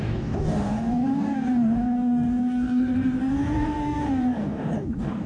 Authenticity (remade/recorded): remade